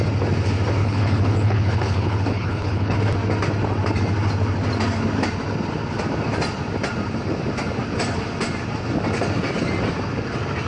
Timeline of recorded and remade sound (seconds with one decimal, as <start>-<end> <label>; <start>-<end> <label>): 0.0-0.8 recorded; 0.8-3.0 remade; 3.0-10.7 recorded